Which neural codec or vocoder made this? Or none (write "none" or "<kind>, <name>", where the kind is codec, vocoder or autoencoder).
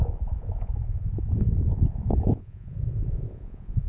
vocoder, Vocos